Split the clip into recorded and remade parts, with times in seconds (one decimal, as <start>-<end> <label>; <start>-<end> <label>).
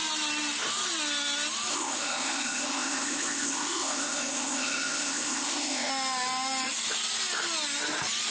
0.0-1.7 recorded; 1.7-5.9 remade; 5.9-8.3 recorded